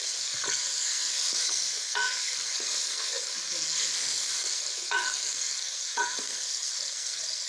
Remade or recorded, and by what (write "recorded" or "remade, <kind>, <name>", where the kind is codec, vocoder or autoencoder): remade, codec, SNAC